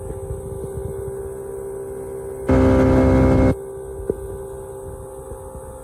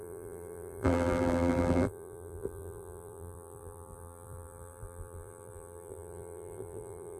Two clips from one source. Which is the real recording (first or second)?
first